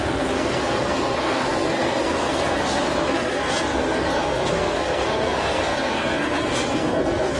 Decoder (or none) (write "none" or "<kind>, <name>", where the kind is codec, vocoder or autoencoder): codec, SNAC